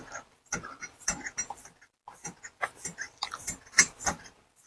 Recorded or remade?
recorded